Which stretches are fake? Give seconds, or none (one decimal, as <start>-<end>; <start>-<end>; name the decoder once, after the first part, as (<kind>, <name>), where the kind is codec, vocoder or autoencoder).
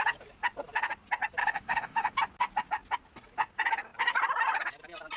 1.4-2.1 (autoencoder, DAC-VAE)